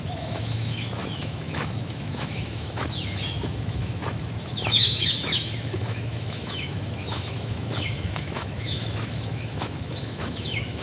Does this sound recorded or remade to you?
remade